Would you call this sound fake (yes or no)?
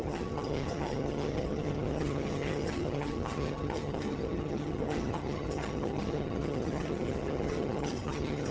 yes